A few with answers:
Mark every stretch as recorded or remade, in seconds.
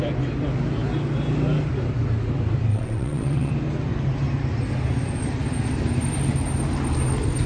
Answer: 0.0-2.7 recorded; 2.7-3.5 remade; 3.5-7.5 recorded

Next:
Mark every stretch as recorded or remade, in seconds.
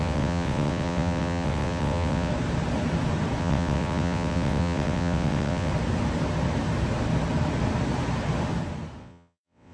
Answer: 0.0-2.3 remade; 2.3-3.4 recorded; 3.4-5.7 remade; 5.7-9.0 recorded; 9.0-9.7 remade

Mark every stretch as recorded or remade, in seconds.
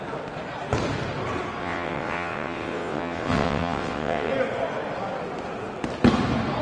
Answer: 0.0-1.6 recorded; 1.6-4.3 remade; 4.3-6.6 recorded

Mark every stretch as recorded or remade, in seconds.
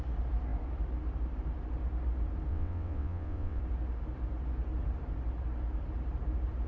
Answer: 0.0-2.5 recorded; 2.5-3.6 remade; 3.6-6.7 recorded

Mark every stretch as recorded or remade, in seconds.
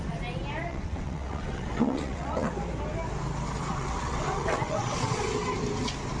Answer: 0.0-0.7 recorded; 0.7-2.5 remade; 2.5-3.7 recorded; 3.7-5.2 remade; 5.2-6.2 recorded